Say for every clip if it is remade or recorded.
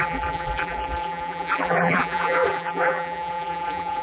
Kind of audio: remade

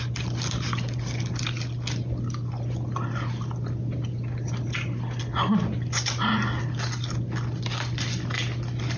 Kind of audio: recorded